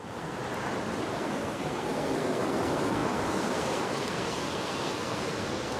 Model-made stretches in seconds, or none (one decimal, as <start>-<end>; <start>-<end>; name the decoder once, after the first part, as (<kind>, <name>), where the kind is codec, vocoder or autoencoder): 0.0-0.4 (codec, SNAC); 1.1-5.8